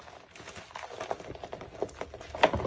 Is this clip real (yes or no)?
yes